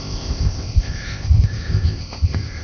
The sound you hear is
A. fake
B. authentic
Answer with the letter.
A